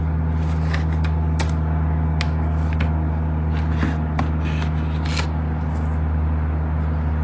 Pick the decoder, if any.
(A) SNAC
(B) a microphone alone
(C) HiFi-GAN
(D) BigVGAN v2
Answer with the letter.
B